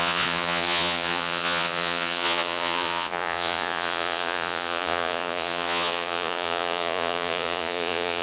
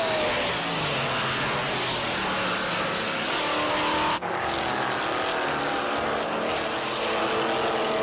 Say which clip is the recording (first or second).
second